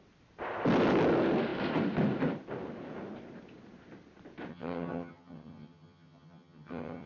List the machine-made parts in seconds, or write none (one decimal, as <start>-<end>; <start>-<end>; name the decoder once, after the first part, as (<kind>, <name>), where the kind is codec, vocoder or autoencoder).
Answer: 4.5-7.1 (vocoder, HiFi-GAN)